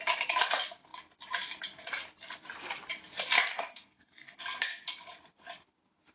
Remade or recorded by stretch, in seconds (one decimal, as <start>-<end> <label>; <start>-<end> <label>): 0.0-3.5 recorded; 3.5-4.4 remade; 4.4-6.1 recorded